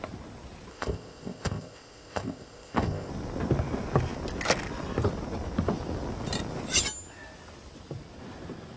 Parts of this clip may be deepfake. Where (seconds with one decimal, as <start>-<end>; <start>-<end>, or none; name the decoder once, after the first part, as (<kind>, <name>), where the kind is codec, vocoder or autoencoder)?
0.7-3.1 (codec, ZipCodec)